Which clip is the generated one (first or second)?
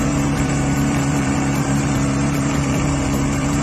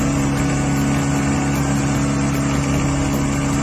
first